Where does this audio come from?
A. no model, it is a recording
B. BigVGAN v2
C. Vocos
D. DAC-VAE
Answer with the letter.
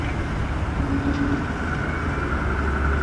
A